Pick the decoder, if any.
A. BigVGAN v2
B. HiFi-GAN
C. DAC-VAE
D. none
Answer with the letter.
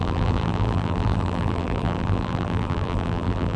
A